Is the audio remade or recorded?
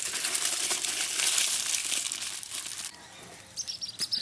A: recorded